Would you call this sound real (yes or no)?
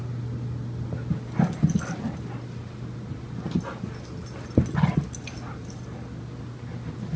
yes